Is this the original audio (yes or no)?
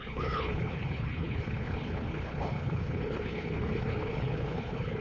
no